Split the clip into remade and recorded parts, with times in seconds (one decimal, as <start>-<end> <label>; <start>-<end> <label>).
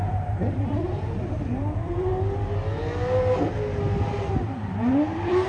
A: 0.0-2.1 remade; 2.1-4.1 recorded; 4.1-5.5 remade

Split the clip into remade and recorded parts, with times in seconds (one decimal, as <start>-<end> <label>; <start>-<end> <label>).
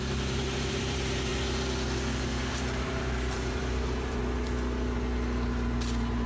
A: 0.0-1.3 remade; 1.3-2.5 recorded; 2.5-4.2 remade; 4.2-6.3 recorded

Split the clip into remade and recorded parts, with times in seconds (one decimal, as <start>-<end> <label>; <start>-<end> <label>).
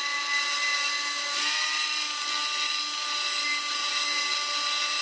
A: 0.0-3.0 recorded; 3.0-3.9 remade; 3.9-5.0 recorded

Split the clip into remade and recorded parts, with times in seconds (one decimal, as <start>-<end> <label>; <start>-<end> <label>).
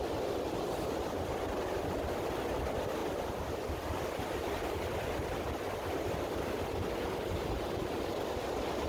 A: 0.0-8.9 recorded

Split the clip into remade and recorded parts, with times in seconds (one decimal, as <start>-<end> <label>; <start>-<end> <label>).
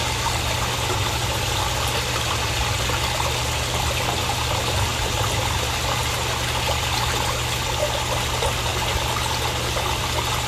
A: 0.0-10.5 recorded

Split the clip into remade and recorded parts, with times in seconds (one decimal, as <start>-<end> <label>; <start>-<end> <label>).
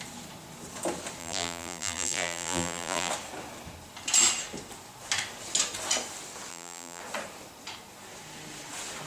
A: 0.0-1.2 recorded; 1.2-3.1 remade; 3.1-6.5 recorded; 6.5-7.0 remade; 7.0-9.1 recorded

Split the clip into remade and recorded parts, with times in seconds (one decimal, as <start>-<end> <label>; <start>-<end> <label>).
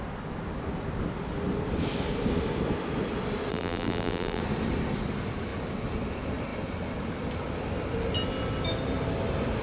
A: 0.0-3.5 recorded; 3.5-4.4 remade; 4.4-9.6 recorded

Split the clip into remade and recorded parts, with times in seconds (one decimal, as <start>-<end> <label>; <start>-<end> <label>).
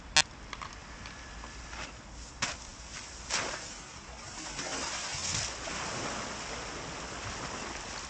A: 0.0-8.1 recorded